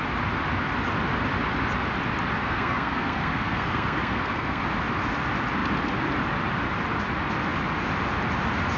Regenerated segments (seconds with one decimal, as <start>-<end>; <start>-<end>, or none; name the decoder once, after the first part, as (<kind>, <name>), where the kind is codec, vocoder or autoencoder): 2.4-4.6 (codec, SNAC)